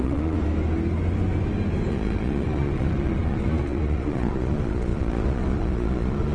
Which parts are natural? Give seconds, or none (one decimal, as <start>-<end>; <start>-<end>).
0.4-1.9